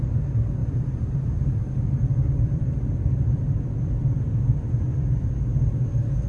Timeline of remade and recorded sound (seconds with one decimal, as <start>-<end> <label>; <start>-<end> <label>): 0.0-0.6 recorded; 0.6-3.8 remade; 3.8-4.9 recorded; 4.9-5.4 remade; 5.4-6.3 recorded